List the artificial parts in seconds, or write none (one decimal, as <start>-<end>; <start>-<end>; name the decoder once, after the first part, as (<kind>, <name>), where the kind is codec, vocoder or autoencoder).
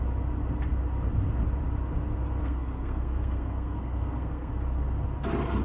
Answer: 2.4-4.5 (codec, SNAC)